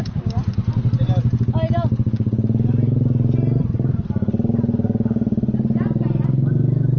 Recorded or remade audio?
recorded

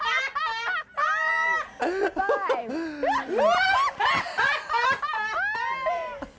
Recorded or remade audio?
recorded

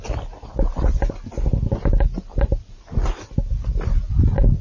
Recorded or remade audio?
recorded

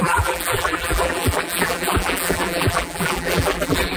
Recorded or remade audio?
remade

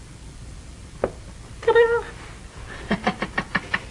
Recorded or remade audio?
recorded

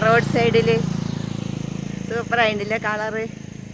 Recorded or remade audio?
recorded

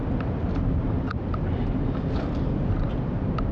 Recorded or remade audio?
recorded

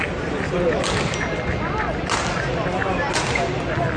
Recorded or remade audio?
recorded